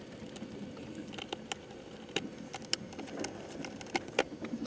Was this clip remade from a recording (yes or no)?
no